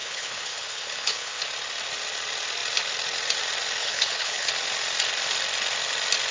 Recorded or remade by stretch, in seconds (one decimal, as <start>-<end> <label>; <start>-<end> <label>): 0.0-1.4 remade; 1.4-3.8 recorded; 3.8-4.5 remade; 4.5-6.3 recorded